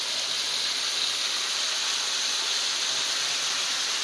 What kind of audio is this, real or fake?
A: real